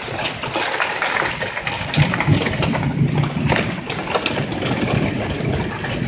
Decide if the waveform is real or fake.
real